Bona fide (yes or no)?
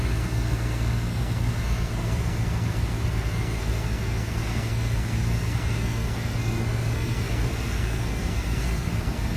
no